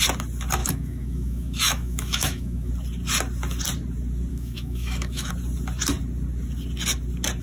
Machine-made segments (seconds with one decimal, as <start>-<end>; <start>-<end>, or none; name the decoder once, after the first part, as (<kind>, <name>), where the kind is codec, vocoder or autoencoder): 0.6-2.7 (autoencoder, DAC-VAE); 4.3-5.3